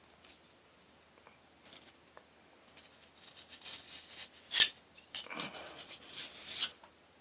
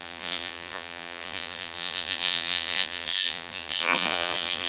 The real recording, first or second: first